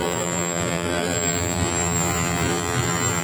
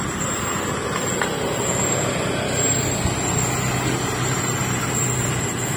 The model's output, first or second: first